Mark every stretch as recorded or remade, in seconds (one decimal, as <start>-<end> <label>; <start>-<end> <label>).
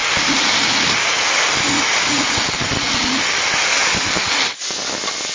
0.0-5.3 recorded